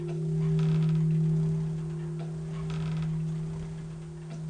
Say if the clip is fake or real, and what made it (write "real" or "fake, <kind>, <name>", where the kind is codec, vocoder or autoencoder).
real